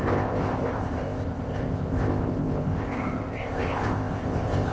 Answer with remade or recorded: remade